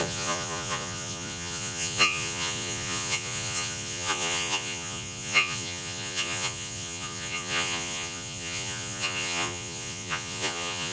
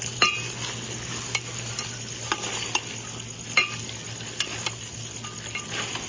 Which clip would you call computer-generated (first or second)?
first